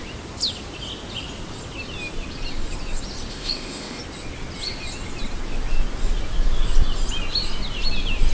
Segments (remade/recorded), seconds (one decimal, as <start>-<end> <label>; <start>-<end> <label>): 0.0-3.3 recorded; 3.3-4.0 remade; 4.0-8.3 recorded